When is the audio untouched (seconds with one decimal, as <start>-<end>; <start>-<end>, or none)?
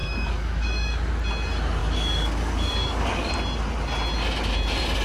1.1-1.8; 3.3-5.0